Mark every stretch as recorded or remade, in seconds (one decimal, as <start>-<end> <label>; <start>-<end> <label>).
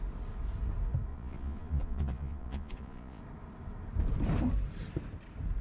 0.0-1.1 recorded; 1.1-3.2 remade; 3.2-5.6 recorded